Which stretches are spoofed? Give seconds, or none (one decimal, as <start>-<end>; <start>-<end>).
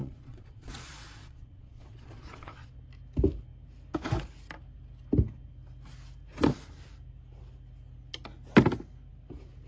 0.0-2.7